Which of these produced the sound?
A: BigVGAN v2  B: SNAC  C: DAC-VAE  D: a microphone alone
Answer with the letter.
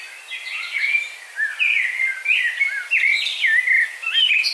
D